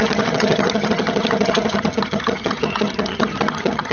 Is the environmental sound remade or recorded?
remade